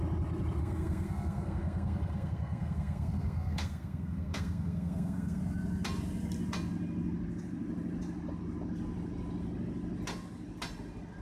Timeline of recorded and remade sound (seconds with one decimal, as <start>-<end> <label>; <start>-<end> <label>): 0.0-0.6 recorded; 0.6-5.4 remade; 5.4-11.2 recorded

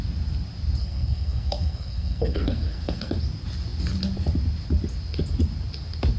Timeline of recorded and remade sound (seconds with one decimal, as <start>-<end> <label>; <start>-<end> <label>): 0.0-0.8 recorded; 0.8-3.1 remade; 3.1-6.2 recorded

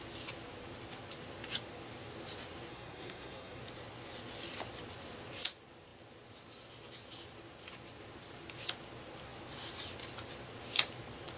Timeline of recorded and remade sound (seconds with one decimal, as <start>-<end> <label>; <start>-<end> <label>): 0.0-2.7 recorded; 2.7-3.6 remade; 3.6-11.4 recorded